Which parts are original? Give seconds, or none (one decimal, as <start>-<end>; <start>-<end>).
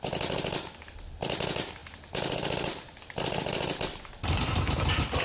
0.0-5.2